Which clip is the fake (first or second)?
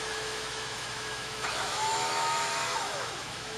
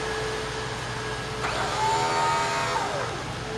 first